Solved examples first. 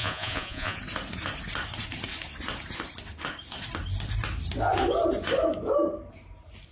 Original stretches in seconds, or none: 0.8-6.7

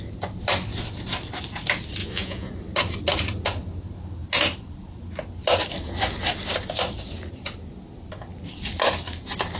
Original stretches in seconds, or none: 0.0-2.0; 2.5-9.6

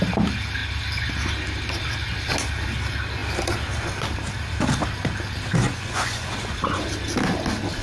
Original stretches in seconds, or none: 0.0-5.6; 6.8-7.8

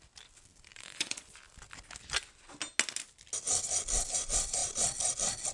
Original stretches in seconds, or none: 0.0-0.7; 1.3-5.5